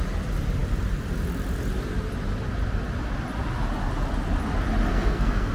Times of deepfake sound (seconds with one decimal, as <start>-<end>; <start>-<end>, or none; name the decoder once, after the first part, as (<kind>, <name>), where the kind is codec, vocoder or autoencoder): 4.9-5.5 (codec, SNAC)